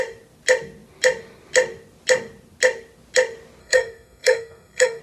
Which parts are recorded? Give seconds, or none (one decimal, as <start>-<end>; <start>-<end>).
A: 0.0-3.6

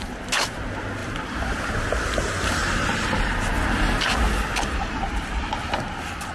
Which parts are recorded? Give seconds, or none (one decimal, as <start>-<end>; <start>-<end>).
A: 0.0-1.0; 1.7-6.3

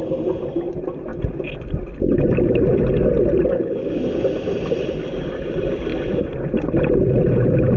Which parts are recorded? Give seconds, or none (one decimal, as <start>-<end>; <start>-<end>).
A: 0.0-3.5; 4.0-7.8

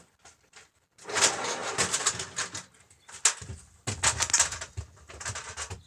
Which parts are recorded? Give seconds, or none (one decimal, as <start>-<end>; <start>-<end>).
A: 0.0-5.9